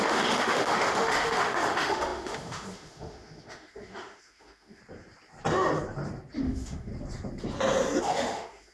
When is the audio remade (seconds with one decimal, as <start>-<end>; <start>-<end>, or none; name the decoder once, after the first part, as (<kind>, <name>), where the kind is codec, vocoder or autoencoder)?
0.0-4.8 (autoencoder, DAC-VAE); 6.4-6.9; 8.0-8.7